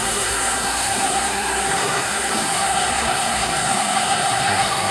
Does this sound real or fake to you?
fake